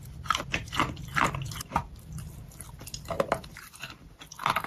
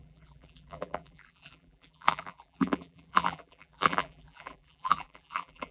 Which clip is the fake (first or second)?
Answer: second